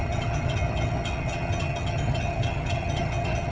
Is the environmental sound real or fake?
fake